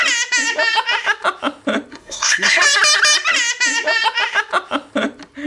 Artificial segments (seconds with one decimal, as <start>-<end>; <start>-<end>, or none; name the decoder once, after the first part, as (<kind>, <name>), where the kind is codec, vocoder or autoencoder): 1.9-2.6 (codec, SNAC)